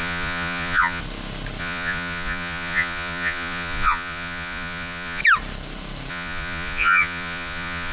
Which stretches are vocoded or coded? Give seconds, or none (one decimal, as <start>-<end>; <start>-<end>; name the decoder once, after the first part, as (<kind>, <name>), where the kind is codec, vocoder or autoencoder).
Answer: 0.0-1.0 (vocoder, Vocos); 1.6-5.2; 6.1-7.9